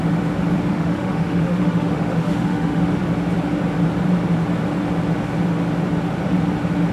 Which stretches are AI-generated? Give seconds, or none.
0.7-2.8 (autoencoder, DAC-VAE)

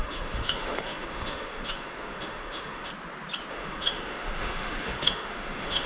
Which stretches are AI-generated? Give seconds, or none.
0.0-2.9 (autoencoder, DAC-VAE); 3.5-5.9

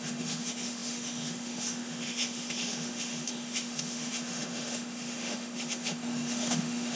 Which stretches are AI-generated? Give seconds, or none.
0.0-7.0 (autoencoder, DAC-VAE)

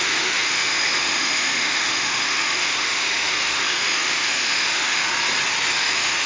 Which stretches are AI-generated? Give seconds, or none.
0.0-5.1 (autoencoder, DAC-VAE); 5.7-6.3

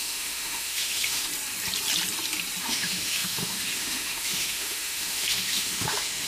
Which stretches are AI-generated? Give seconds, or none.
0.0-1.3 (autoencoder, DAC-VAE); 2.6-6.3